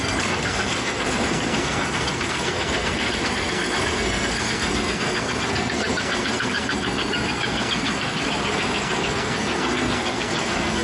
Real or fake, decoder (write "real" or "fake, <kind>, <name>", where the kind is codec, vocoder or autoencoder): fake, codec, SNAC